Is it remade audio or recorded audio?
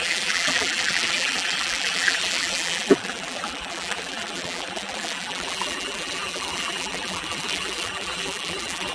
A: remade